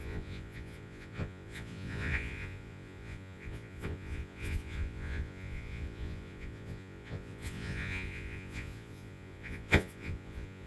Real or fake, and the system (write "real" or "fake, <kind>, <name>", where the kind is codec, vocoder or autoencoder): fake, vocoder, Vocos